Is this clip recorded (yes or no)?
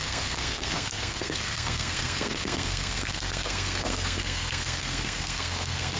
no